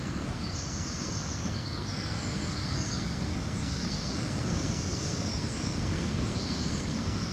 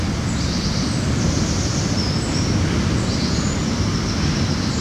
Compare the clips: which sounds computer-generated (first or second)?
first